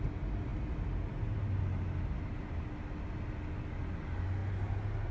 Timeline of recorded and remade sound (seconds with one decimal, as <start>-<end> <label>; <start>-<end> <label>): 0.0-5.1 recorded

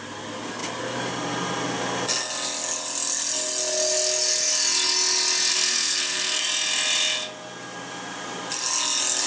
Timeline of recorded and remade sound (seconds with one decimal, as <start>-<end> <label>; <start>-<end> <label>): 0.0-5.5 recorded; 5.5-6.4 remade; 6.4-9.3 recorded

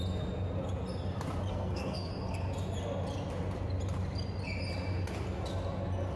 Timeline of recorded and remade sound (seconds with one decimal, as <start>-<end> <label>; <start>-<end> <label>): 0.0-1.5 recorded; 1.5-2.1 remade; 2.1-6.2 recorded

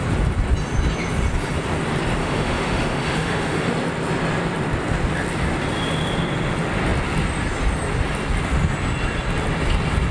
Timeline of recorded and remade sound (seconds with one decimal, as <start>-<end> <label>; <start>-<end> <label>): 0.0-2.2 recorded; 2.2-3.7 remade; 3.7-10.1 recorded

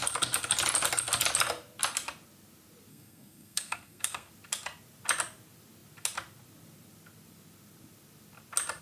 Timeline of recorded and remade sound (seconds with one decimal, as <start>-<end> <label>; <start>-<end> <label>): 0.0-2.9 recorded; 2.9-4.3 remade; 4.3-8.8 recorded

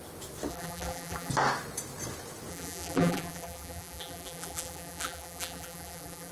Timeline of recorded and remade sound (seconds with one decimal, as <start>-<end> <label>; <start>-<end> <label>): 0.0-0.5 recorded; 0.5-1.3 remade; 1.3-2.5 recorded; 2.5-6.3 remade

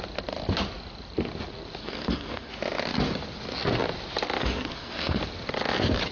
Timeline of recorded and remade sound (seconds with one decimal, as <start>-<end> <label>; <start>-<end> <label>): 0.0-1.8 recorded; 1.8-2.5 remade; 2.5-4.4 recorded; 4.4-5.2 remade; 5.2-6.1 recorded